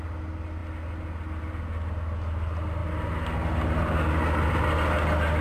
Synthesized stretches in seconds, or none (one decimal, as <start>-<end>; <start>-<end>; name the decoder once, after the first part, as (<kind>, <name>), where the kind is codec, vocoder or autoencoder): none